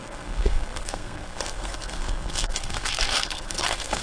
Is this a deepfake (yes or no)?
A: yes